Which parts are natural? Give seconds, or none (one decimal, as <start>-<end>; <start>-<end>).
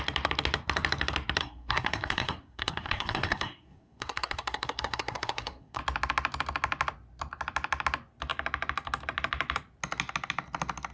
0.0-1.4; 5.8-10.9